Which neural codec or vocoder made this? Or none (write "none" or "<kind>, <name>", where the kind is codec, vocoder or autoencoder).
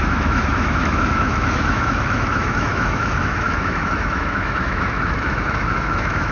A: autoencoder, DAC-VAE